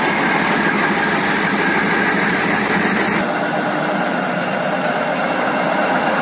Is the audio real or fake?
real